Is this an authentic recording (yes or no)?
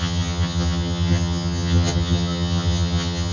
no